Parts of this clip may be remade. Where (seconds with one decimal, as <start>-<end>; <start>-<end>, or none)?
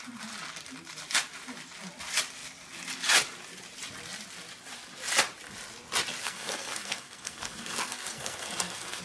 6.2-9.0